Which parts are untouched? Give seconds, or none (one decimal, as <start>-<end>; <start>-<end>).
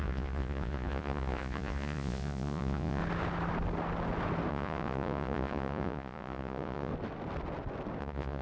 3.0-4.5; 6.9-8.0